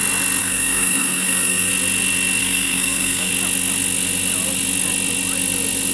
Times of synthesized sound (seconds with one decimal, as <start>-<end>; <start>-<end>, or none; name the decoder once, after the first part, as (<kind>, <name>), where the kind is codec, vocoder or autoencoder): 0.4-1.7 (codec, SNAC); 2.4-3.3